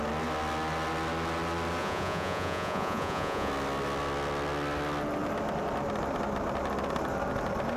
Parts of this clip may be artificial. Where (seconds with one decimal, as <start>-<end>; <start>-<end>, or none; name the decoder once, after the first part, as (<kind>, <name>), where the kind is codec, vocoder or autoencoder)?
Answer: 1.8-3.5 (vocoder, Vocos)